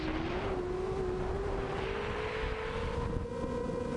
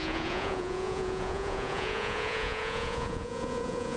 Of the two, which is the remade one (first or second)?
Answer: second